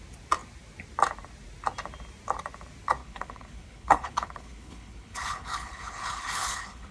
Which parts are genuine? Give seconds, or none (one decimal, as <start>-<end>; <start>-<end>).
0.0-3.0